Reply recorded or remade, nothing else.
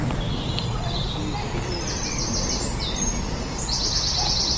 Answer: recorded